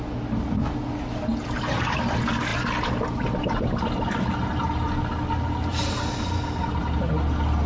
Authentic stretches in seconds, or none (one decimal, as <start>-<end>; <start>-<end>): 0.0-7.7